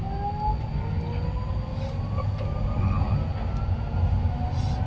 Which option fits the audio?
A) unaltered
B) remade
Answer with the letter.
A